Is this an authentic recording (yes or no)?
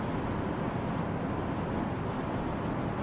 yes